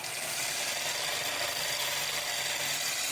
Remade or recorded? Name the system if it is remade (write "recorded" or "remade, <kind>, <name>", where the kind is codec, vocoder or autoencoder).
remade, vocoder, BigVGAN v2